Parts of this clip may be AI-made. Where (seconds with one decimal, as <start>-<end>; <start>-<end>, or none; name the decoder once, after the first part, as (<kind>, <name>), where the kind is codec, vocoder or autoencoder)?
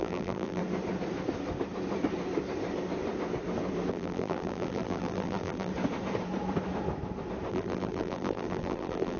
0.0-0.6 (vocoder, BigVGAN v2); 3.9-5.7; 7.5-9.2